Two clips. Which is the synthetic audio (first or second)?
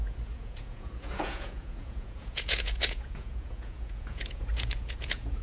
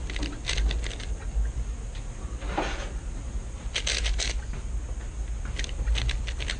first